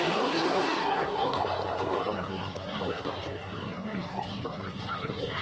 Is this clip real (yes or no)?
no